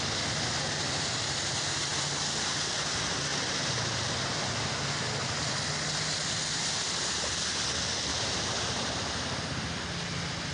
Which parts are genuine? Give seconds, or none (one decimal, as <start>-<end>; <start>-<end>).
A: 0.0-3.3; 4.1-8.1; 9.2-10.5